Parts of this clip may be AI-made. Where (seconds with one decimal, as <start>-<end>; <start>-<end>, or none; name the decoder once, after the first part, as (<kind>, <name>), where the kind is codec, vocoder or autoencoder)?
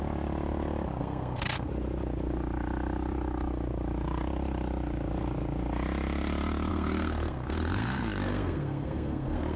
1.0-1.7 (codec, SNAC); 6.7-9.6